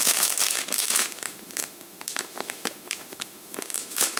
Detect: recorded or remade remade